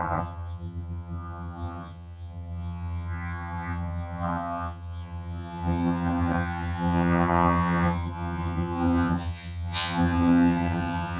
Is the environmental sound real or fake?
fake